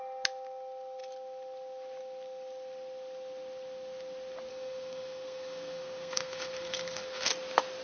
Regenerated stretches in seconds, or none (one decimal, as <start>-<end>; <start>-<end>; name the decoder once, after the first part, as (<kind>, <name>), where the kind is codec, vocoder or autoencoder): 4.5-7.3 (codec, SNAC)